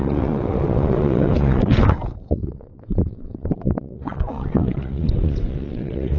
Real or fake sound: fake